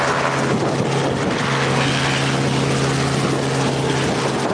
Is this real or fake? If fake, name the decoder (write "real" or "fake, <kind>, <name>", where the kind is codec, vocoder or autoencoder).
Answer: real